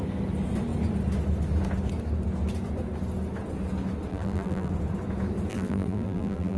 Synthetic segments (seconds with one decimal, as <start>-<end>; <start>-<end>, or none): 4.1-4.7; 5.5-6.6